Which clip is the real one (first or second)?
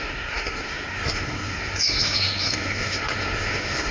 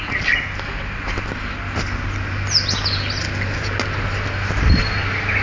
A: second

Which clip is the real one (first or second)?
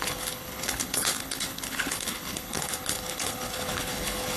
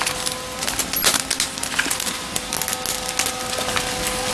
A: second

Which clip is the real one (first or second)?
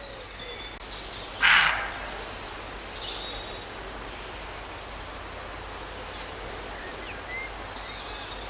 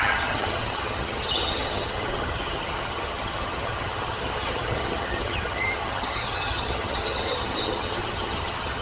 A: first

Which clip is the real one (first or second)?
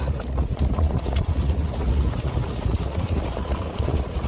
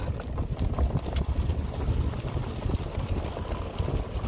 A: second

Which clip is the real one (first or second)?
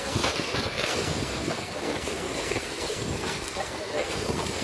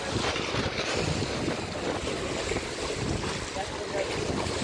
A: second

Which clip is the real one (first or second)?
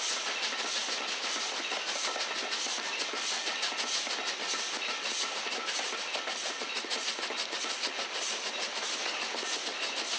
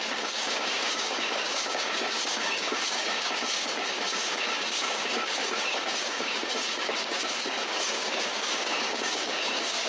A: first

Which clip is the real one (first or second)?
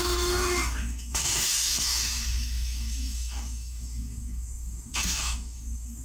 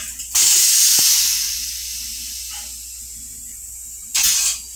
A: second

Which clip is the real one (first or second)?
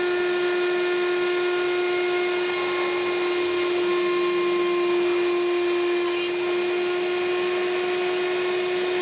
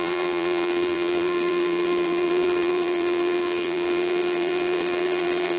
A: first